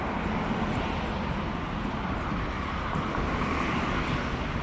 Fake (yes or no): no